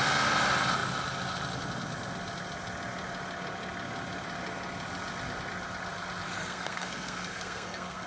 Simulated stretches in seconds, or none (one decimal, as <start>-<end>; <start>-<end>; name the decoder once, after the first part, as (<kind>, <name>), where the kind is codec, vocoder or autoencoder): 6.4-8.1 (codec, SNAC)